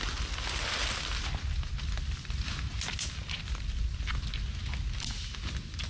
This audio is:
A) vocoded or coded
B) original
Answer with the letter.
B